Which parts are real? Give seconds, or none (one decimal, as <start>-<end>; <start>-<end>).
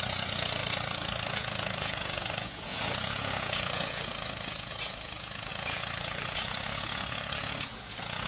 0.6-1.3